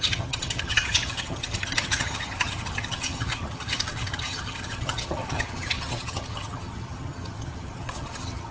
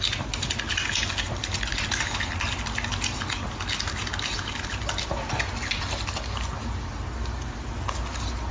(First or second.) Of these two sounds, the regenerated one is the first